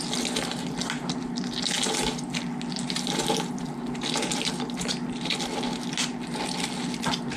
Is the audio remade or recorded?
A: recorded